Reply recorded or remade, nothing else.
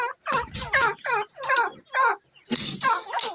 recorded